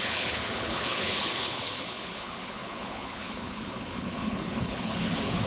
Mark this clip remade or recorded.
remade